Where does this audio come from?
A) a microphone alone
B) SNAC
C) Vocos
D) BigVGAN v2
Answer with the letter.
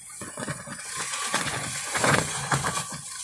C